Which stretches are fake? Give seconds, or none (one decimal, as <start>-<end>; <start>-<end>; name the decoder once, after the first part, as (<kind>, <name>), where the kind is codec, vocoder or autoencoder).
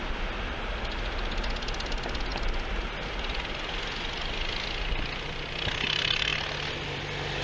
none